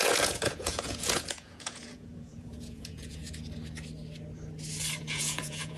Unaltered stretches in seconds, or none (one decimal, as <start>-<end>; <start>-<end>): 3.2-5.0